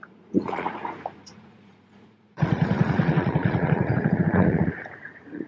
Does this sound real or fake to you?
fake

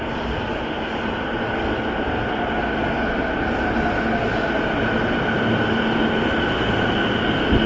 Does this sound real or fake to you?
real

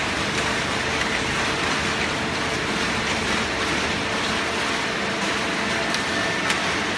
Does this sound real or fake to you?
real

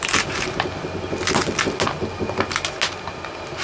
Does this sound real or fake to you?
real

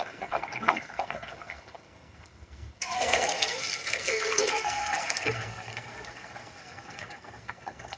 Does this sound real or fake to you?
fake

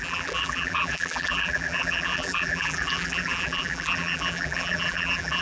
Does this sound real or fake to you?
fake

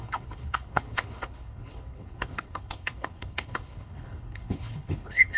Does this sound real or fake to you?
fake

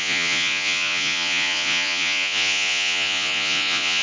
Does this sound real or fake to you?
fake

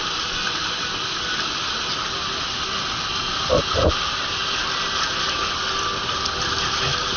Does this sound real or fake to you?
real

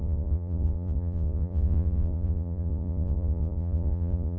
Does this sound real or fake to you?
fake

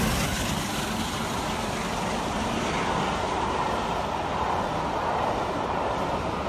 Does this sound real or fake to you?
real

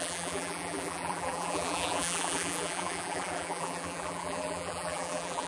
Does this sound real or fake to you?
fake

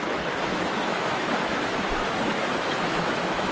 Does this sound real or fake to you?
fake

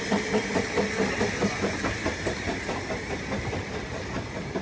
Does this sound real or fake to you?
real